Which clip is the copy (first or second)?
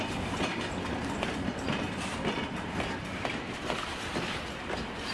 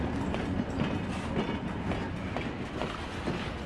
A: first